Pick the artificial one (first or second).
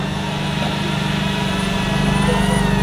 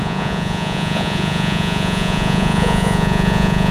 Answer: second